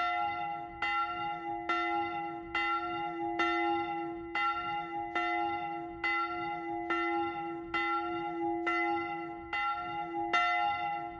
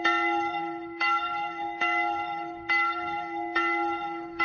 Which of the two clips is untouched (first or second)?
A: first